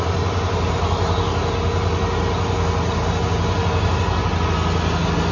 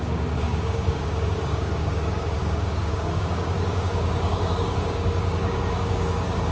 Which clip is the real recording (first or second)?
first